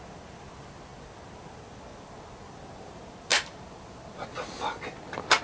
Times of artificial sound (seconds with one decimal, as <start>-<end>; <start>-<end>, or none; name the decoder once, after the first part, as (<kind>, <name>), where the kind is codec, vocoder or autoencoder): 0.0-0.9 (vocoder, BigVGAN v2); 2.8-3.3